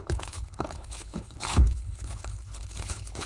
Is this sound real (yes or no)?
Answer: no